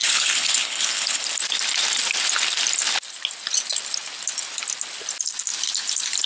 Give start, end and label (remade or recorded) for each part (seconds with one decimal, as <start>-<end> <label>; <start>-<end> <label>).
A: 0.0-1.2 remade; 1.2-6.3 recorded